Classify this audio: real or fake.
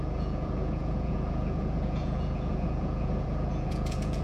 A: fake